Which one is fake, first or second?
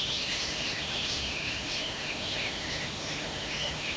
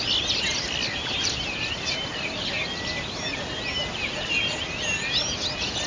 first